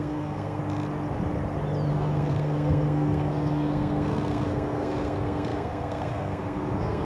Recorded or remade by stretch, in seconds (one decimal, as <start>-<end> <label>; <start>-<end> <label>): 0.0-0.6 remade; 0.6-1.9 recorded; 1.9-7.0 remade